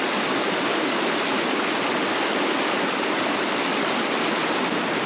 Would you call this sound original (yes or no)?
yes